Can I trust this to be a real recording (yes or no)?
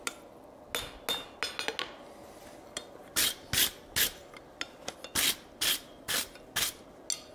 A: yes